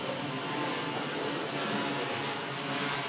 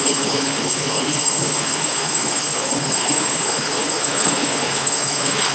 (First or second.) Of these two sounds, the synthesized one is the second